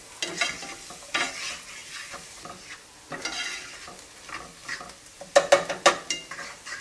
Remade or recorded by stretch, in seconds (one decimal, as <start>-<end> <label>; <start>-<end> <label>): 0.0-6.8 recorded